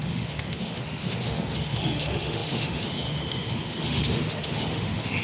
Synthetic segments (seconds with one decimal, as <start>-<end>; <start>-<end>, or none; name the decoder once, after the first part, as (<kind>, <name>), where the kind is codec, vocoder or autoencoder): 0.0-5.2 (autoencoder, DAC-VAE)